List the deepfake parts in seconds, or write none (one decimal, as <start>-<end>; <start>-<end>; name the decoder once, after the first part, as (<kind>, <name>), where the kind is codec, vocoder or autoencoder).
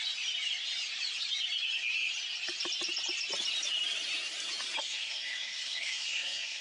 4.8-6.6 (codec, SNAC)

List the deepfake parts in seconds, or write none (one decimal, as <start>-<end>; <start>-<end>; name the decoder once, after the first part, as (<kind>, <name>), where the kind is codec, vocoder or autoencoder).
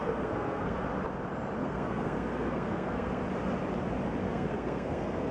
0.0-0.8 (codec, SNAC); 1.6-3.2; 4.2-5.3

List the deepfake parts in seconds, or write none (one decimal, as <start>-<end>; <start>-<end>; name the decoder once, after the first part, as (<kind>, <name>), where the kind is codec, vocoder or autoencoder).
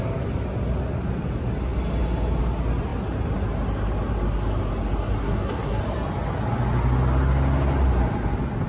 5.2-5.8 (codec, SNAC)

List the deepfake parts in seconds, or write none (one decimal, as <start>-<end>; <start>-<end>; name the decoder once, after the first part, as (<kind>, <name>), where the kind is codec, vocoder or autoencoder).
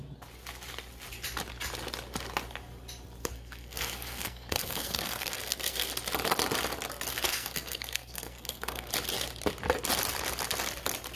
3.2-5.9 (codec, SNAC); 7.1-8.9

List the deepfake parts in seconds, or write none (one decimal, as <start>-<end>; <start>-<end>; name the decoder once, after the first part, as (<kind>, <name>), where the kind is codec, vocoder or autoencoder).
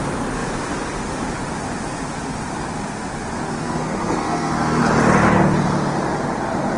3.5-4.8 (codec, SNAC)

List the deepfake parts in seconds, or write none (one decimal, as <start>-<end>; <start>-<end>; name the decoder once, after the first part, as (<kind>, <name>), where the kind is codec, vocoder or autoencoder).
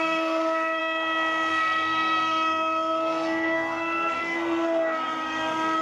0.0-0.8 (codec, SNAC); 1.5-5.8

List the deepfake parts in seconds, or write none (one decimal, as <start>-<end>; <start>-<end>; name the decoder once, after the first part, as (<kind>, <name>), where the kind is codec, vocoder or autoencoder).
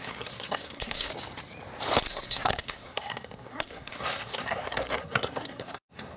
0.0-1.1 (codec, SNAC); 2.1-6.2